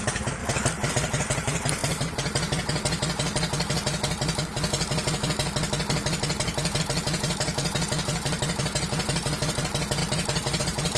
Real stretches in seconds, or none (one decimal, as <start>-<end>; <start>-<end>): 0.4-0.9; 1.8-6.8